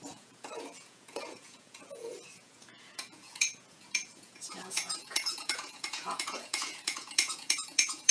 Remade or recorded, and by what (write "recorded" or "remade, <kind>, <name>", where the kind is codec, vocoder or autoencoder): remade, vocoder, Vocos